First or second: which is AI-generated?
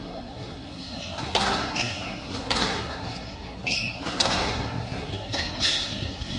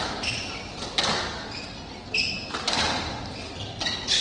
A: first